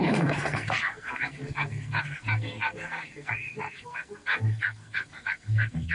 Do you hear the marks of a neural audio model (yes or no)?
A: yes